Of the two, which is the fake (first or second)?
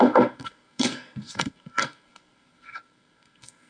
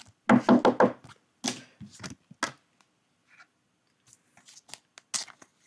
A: first